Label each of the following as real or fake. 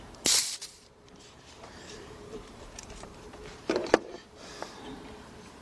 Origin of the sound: fake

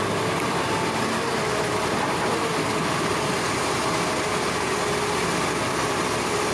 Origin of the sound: real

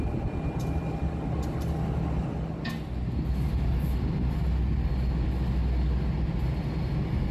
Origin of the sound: real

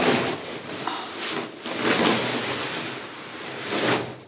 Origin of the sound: real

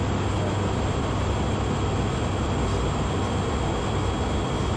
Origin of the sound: real